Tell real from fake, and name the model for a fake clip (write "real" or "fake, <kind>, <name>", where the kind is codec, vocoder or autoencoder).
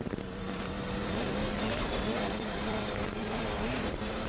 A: fake, vocoder, BigVGAN v2